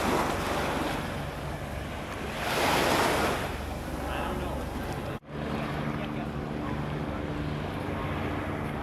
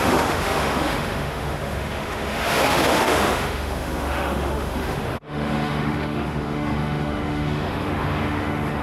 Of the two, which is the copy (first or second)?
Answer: second